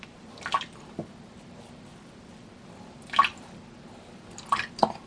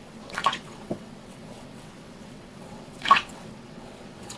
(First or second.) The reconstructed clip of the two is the second